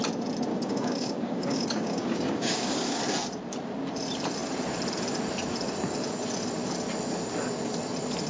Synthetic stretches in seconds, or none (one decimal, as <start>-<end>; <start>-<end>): 0.5-3.0